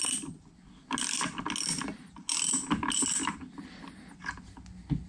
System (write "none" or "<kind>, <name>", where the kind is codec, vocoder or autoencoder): none